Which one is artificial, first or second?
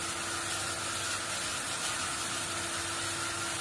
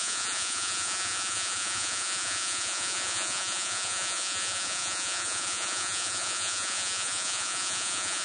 second